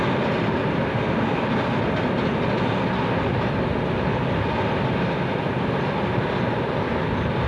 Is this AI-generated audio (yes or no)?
no